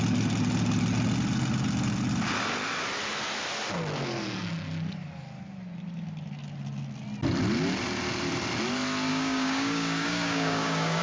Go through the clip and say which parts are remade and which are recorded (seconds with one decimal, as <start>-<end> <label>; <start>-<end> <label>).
0.0-9.1 recorded; 9.1-11.0 remade